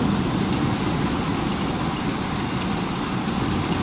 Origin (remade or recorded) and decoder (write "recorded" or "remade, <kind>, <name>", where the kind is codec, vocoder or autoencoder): recorded